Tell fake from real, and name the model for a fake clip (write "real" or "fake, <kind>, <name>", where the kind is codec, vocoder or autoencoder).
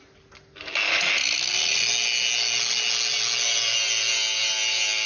real